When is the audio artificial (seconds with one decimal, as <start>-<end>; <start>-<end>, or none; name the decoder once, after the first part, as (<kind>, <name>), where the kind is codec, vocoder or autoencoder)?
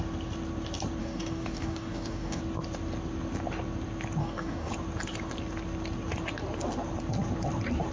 1.0-2.4 (codec, DAC); 4.2-4.7